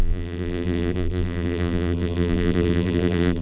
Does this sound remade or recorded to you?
remade